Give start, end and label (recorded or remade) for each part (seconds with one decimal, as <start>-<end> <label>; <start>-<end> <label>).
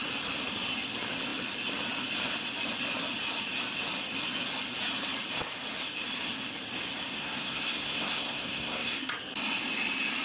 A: 0.0-7.2 recorded; 7.2-9.1 remade; 9.1-10.2 recorded